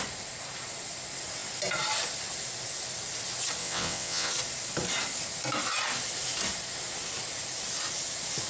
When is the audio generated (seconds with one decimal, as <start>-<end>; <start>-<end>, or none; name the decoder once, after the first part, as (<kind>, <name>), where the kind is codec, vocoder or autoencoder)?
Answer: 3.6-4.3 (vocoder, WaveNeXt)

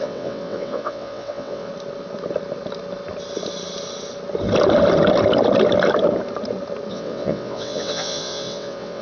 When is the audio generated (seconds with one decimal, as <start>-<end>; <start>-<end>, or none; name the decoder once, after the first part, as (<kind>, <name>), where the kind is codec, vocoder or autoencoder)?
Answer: 0.0-1.7 (vocoder, WaveNeXt); 6.9-9.0

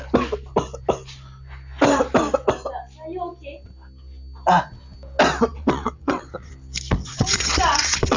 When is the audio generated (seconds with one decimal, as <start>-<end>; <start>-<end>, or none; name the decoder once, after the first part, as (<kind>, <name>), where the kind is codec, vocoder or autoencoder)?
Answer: 5.5-6.5 (vocoder, WaveNeXt); 7.0-8.2

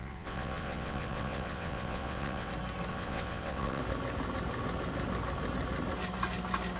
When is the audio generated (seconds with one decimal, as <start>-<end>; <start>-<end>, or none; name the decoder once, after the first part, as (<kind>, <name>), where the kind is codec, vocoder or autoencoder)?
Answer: 0.0-2.5 (vocoder, WaveNeXt); 2.9-3.8

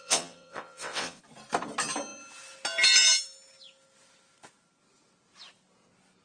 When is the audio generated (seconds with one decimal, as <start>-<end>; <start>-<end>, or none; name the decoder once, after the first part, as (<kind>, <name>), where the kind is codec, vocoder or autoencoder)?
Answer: 0.0-1.2 (vocoder, WaveNeXt)

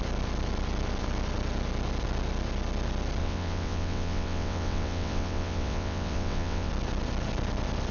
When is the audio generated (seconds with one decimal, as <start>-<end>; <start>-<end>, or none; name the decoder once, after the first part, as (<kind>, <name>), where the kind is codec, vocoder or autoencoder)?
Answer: 3.2-6.7 (vocoder, WaveNeXt)

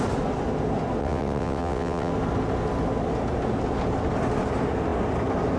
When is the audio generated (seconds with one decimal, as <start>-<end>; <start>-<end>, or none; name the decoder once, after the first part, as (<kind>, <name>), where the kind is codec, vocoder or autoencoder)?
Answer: 1.0-2.1 (vocoder, WaveNeXt)